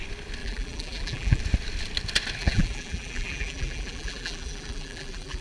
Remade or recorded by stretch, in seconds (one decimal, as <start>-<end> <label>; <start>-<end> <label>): 0.0-0.4 recorded; 0.4-1.4 remade; 1.4-2.4 recorded; 2.4-5.4 remade